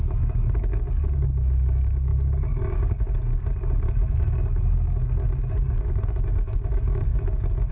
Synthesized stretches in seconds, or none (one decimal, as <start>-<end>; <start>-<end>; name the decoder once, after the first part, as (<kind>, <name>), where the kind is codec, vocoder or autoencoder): 0.0-7.7 (codec, DAC)